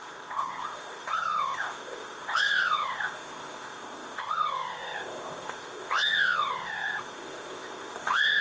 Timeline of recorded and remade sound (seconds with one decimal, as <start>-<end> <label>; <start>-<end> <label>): 0.0-8.4 remade